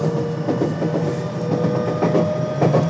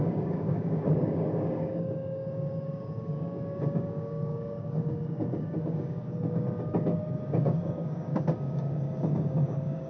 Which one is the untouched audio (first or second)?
first